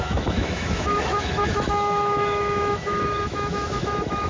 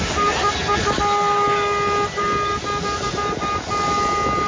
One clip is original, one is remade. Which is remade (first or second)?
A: first